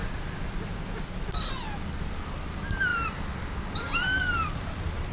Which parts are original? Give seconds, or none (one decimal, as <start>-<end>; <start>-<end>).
0.0-5.1